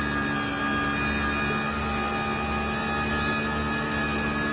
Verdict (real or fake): real